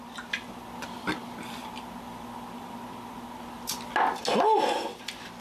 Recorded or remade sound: recorded